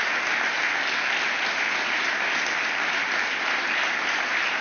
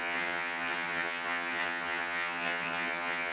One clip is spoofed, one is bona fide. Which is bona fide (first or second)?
first